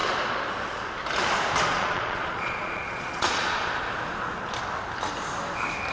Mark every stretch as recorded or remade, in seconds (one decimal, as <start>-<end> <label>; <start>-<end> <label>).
0.0-1.7 recorded; 1.7-3.7 remade; 3.7-5.9 recorded